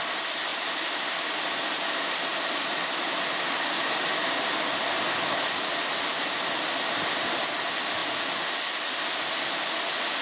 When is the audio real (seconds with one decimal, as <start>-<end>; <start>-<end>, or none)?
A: 0.0-10.2